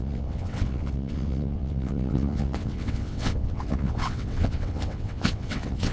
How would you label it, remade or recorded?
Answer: remade